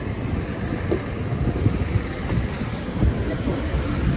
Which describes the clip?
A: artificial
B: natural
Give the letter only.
B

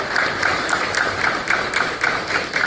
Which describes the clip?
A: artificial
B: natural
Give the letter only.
B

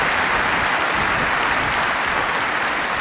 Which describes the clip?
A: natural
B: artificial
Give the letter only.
A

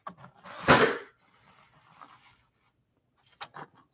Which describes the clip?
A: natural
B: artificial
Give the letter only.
A